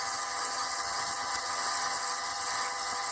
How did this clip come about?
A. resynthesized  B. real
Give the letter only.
A